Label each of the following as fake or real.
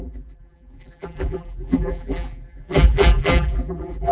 fake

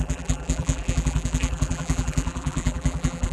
fake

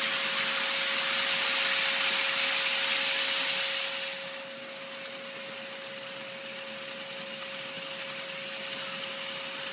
real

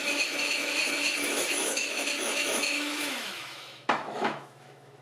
fake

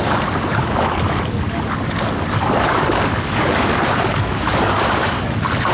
fake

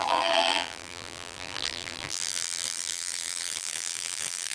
fake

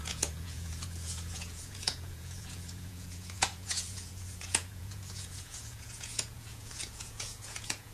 fake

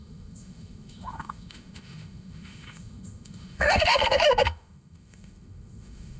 fake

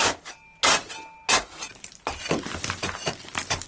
real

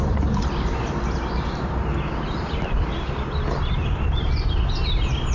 fake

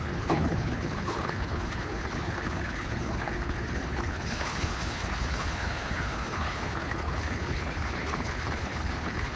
fake